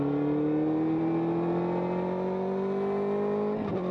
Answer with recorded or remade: recorded